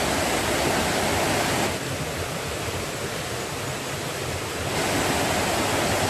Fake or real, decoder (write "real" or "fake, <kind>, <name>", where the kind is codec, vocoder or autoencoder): real